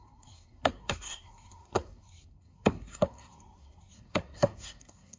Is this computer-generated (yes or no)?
yes